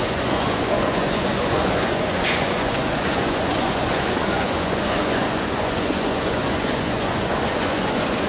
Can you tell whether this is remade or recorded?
remade